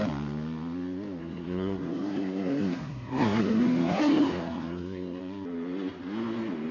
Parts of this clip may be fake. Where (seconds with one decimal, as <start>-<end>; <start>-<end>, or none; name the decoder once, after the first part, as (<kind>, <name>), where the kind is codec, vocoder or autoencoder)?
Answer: 1.2-5.2 (codec, SNAC)